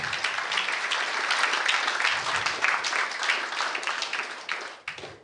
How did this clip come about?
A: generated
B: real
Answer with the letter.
B